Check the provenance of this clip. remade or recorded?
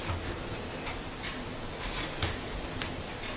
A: recorded